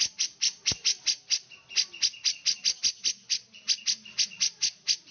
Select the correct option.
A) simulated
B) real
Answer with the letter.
B